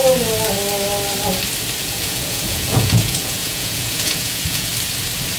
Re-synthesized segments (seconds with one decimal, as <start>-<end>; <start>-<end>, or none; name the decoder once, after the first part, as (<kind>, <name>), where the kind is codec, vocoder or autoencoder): 1.8-4.7 (vocoder, Vocos)